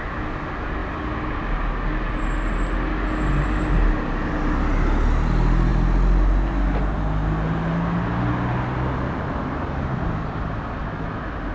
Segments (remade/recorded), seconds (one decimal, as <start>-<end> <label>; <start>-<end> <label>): 0.0-11.5 recorded